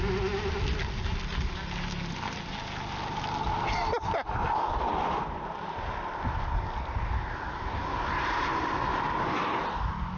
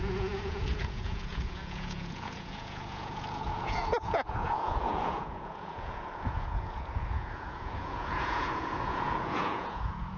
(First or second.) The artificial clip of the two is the second